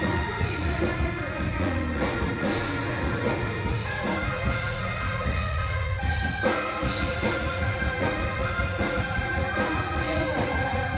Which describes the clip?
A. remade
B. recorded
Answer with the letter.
A